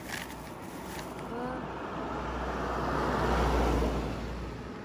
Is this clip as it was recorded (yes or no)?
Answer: yes